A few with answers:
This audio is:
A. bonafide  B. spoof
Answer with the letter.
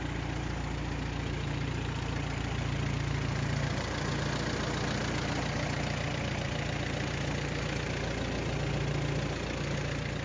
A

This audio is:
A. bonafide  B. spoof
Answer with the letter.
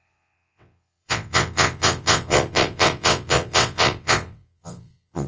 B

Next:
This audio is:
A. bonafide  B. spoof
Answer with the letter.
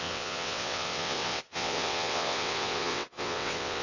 B